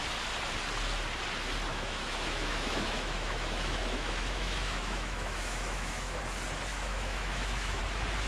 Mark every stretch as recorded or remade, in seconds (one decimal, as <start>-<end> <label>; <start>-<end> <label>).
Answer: 0.0-1.7 recorded; 1.7-6.2 remade; 6.2-6.7 recorded; 6.7-7.8 remade; 7.8-8.3 recorded